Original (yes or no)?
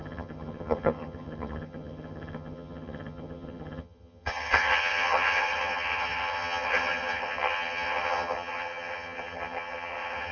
no